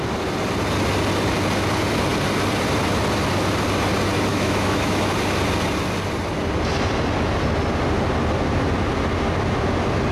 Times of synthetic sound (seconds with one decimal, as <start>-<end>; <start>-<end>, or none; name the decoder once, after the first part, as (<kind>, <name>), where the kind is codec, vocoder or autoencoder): 4.3-5.1 (autoencoder, DAC-VAE)